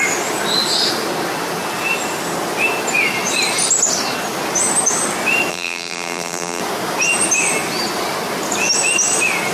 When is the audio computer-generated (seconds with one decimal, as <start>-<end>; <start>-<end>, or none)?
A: 5.5-6.6